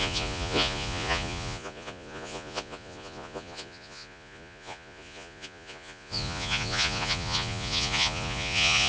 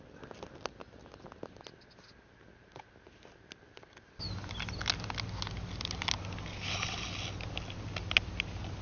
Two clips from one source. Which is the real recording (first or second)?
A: second